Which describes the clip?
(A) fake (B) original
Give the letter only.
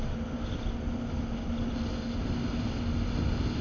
B